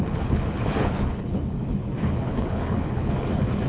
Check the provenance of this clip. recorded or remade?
remade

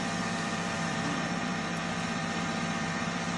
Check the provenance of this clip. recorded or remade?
remade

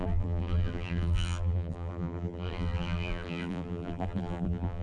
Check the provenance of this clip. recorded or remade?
remade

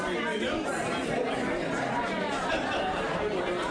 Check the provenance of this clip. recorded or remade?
recorded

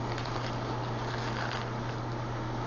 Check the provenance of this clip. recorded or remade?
recorded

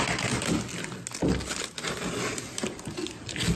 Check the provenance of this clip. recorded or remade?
recorded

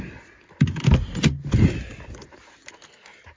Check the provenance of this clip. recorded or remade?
recorded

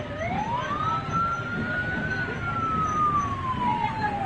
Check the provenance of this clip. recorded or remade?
remade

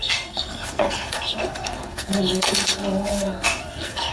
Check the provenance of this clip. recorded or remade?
remade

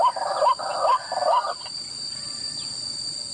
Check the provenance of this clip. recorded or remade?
recorded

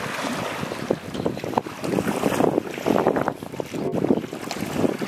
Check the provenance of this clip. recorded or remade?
recorded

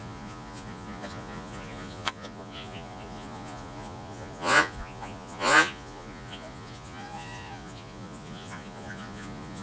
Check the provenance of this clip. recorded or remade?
remade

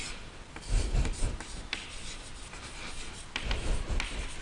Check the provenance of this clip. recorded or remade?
recorded